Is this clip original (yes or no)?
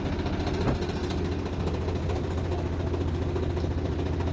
yes